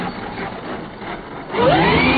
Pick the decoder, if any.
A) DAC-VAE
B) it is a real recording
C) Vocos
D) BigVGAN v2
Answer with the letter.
B